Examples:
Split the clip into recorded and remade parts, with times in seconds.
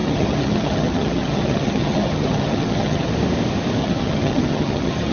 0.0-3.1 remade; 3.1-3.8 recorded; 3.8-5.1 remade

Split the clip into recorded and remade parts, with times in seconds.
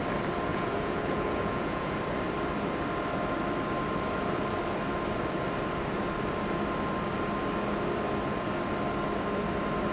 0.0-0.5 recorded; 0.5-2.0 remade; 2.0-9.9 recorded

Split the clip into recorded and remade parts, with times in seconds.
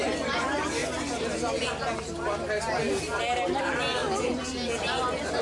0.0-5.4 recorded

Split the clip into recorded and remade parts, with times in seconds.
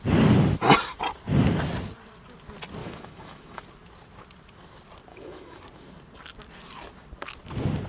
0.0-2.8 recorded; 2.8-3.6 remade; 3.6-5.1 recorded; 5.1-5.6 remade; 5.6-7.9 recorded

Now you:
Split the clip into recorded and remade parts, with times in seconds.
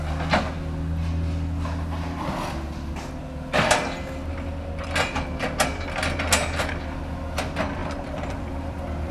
0.0-7.8 recorded; 7.8-9.1 remade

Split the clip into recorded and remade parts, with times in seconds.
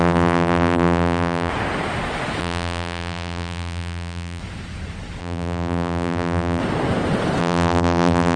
0.0-1.5 remade; 1.5-2.4 recorded; 2.4-4.4 remade; 4.4-5.2 recorded; 5.2-6.6 remade; 6.6-7.4 recorded; 7.4-8.4 remade